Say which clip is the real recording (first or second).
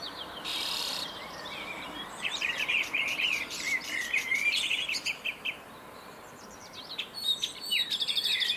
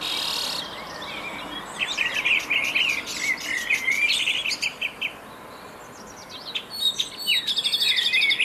second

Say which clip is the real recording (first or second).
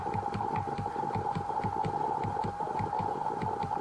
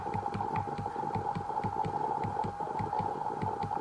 second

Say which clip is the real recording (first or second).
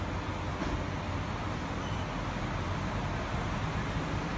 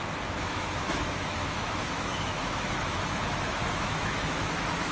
first